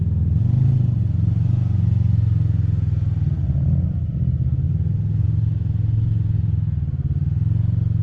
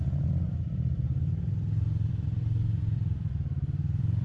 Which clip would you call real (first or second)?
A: first